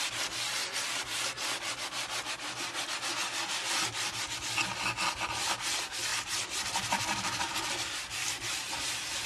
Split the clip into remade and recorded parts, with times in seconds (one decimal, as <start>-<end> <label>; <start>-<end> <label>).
0.0-6.1 recorded; 6.1-9.3 remade